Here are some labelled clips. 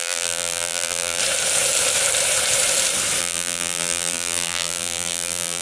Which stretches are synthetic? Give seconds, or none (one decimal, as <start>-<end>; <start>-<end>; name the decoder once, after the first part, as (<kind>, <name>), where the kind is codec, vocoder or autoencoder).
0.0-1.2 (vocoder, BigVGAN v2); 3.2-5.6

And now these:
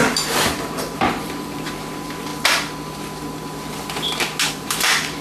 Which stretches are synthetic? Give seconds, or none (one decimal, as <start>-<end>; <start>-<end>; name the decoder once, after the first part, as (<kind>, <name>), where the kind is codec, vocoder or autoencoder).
0.0-2.3 (vocoder, BigVGAN v2); 4.5-5.2

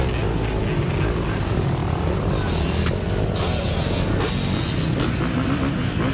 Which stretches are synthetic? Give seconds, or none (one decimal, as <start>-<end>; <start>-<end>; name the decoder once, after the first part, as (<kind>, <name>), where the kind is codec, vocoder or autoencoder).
none